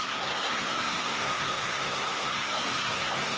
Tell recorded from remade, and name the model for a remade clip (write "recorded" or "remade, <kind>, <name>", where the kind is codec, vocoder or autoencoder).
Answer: remade, codec, SNAC